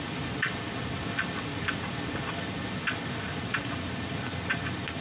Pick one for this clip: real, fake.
real